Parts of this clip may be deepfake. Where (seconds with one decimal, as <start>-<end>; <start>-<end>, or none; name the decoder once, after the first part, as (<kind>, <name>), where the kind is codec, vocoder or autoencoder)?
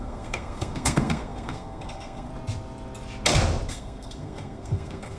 0.0-2.3 (codec, SNAC); 3.7-5.2